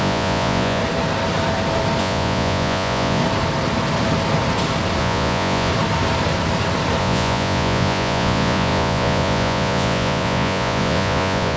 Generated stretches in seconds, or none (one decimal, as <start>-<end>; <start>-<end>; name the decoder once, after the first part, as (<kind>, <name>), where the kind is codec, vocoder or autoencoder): 0.0-0.8 (vocoder, Vocos); 2.0-3.2; 5.0-5.7; 7.0-11.6